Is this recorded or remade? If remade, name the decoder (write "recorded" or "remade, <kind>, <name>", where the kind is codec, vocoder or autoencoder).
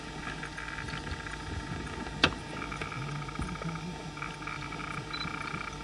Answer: recorded